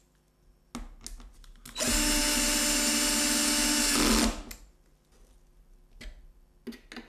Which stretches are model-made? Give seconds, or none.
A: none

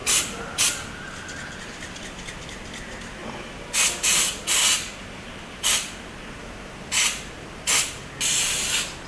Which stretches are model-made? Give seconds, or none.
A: none